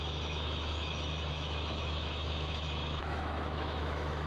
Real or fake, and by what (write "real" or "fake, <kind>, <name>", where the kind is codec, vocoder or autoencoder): fake, autoencoder, DAC-VAE